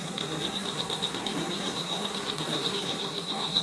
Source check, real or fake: fake